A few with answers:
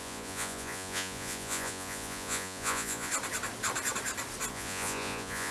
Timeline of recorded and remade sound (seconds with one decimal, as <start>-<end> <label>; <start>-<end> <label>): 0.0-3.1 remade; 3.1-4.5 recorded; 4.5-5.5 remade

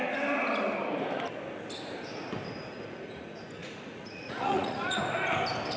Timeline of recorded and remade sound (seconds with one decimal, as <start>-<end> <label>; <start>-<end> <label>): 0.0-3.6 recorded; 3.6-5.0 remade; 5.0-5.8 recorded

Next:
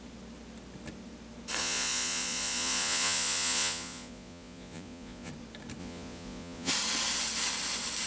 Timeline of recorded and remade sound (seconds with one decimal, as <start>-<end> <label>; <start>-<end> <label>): 0.0-1.6 recorded; 1.6-5.3 remade; 5.3-5.8 recorded; 5.8-6.7 remade; 6.7-8.1 recorded